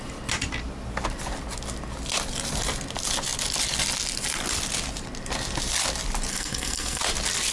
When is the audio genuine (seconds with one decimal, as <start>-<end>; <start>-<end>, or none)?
0.0-6.3; 7.0-7.5